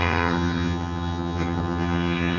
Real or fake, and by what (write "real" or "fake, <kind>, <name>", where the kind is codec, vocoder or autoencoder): fake, vocoder, HiFi-GAN